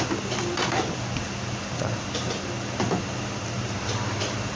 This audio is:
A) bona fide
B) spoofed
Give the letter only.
A